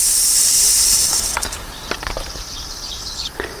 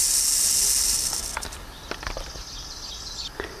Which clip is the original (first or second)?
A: second